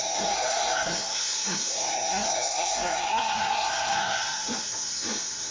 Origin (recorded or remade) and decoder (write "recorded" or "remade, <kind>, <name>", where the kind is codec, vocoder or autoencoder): remade, codec, SNAC